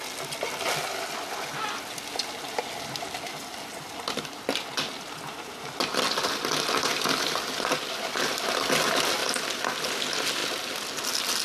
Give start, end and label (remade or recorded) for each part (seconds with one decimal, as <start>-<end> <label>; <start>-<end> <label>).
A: 0.0-11.4 recorded